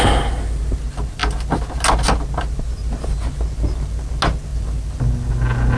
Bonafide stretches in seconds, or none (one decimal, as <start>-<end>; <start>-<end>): 0.0-5.8